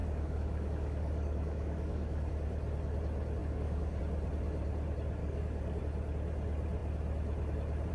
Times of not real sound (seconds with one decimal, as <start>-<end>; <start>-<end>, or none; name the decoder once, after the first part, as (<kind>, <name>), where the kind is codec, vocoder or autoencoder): 0.0-2.3 (codec, DAC); 3.4-4.0; 5.2-5.8